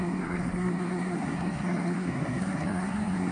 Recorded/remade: remade